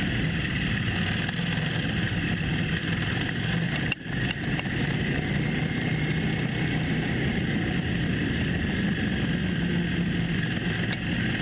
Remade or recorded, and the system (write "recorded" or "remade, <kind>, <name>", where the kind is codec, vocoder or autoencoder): recorded